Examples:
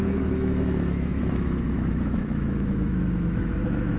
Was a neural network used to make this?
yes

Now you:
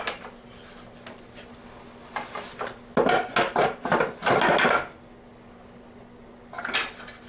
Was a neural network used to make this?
no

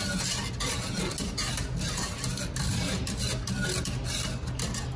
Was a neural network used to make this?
no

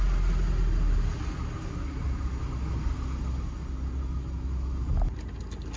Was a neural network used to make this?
no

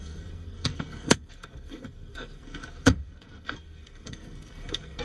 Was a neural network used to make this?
yes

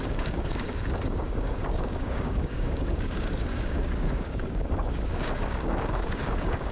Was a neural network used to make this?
yes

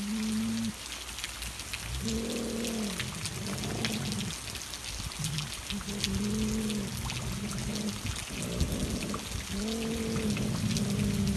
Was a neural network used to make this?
no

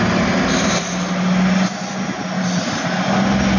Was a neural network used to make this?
no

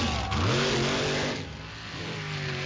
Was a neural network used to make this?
no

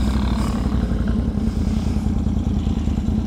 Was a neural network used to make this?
yes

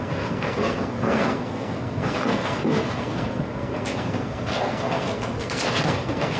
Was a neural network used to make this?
yes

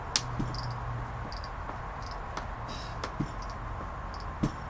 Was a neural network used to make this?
no